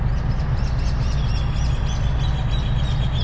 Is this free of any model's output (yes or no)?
yes